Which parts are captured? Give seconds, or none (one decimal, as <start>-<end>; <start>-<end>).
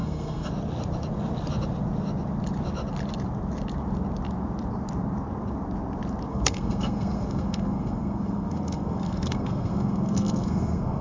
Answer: 0.5-6.3